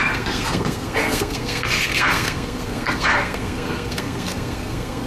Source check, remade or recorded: remade